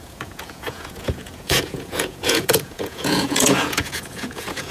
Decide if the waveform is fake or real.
fake